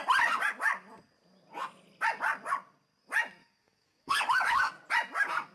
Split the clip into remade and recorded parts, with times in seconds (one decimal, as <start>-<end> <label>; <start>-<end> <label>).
0.0-3.4 recorded; 3.4-4.7 remade; 4.7-5.5 recorded